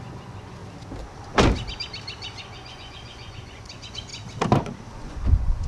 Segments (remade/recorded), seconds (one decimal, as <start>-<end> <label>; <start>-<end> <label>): 0.0-0.6 remade; 0.6-2.4 recorded; 2.4-4.1 remade; 4.1-4.9 recorded; 4.9-5.7 remade